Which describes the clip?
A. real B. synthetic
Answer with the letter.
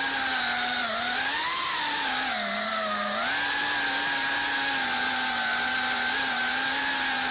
A